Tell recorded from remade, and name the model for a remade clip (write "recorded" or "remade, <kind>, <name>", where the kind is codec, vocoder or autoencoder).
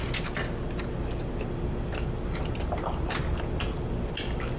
recorded